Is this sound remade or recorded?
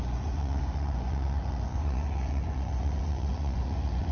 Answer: remade